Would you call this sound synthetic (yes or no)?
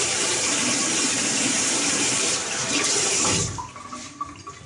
yes